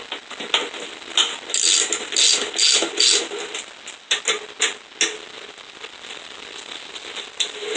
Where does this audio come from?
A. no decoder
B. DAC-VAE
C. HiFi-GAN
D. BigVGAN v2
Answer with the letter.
A